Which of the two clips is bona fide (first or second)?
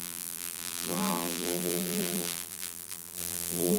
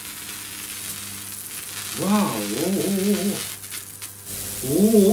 second